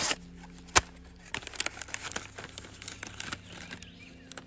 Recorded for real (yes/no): yes